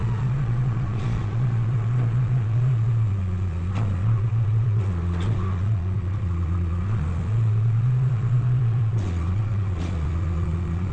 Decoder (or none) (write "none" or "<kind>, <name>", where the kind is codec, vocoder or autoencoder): vocoder, Vocos